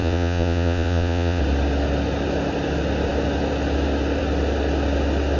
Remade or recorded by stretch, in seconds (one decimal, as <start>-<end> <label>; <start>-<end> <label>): 0.0-1.4 remade; 1.4-5.4 recorded